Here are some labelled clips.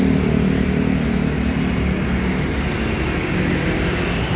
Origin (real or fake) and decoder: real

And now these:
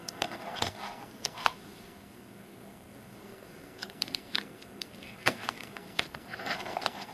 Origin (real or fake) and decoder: fake, codec, SNAC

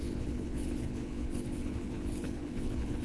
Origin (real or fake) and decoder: fake, codec, HILCodec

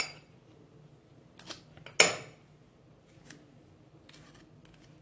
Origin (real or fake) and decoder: real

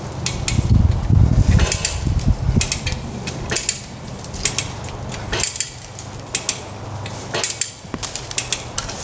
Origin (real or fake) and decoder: real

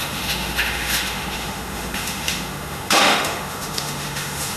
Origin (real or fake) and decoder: fake, autoencoder, DAC-VAE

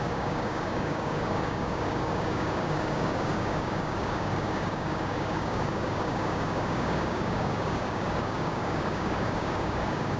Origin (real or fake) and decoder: fake, codec, DAC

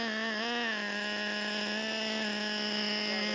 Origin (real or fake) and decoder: real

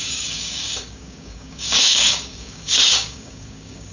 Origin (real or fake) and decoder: fake, codec, DAC